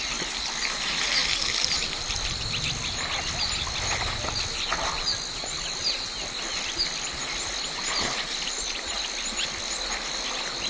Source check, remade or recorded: recorded